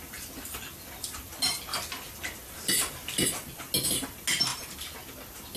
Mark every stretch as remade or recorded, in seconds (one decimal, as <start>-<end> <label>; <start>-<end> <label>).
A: 0.0-5.6 recorded